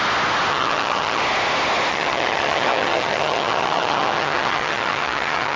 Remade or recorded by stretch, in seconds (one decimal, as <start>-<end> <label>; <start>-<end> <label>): 0.0-0.5 recorded; 0.5-1.2 remade; 1.2-1.9 recorded; 1.9-5.6 remade